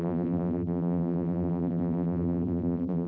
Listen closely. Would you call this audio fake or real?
fake